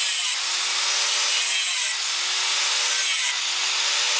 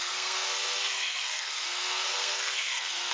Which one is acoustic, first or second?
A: first